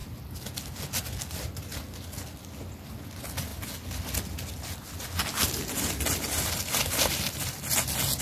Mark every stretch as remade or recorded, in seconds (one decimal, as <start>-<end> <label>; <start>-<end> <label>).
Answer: 0.0-8.2 recorded

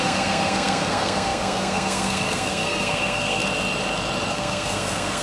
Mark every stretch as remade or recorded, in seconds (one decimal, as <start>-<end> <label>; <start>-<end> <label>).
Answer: 0.0-3.4 remade; 3.4-4.3 recorded; 4.3-5.2 remade

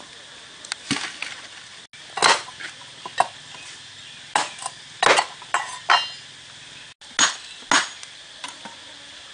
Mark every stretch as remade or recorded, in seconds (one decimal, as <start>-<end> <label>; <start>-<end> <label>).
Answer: 0.0-9.3 recorded

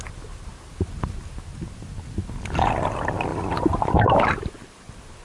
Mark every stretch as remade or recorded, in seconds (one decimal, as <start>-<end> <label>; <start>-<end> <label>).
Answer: 0.0-5.2 recorded

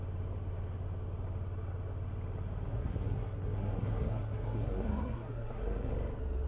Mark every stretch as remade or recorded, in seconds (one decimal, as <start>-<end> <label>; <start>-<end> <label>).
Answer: 0.0-2.7 recorded; 2.7-5.9 remade; 5.9-6.5 recorded

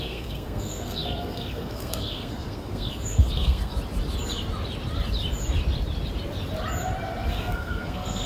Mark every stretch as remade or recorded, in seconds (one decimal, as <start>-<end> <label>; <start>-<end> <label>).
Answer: 0.0-3.7 remade; 3.7-7.3 recorded; 7.3-8.3 remade